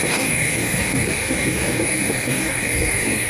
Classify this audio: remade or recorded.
remade